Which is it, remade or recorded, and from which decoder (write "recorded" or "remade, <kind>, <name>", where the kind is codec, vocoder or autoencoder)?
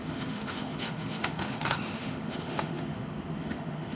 remade, autoencoder, DAC-VAE